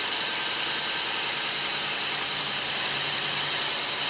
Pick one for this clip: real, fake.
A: real